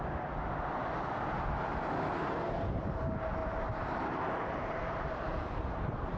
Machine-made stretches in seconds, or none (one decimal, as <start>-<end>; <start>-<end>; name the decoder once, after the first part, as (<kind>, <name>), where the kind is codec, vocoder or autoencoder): 3.4-6.2 (vocoder, BigVGAN v2)